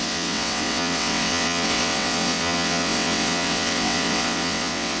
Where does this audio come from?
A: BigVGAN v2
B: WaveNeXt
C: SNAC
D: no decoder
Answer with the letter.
B